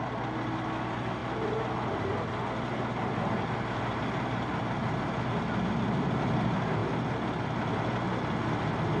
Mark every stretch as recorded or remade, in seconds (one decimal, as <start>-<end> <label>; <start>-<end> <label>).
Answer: 0.0-9.0 recorded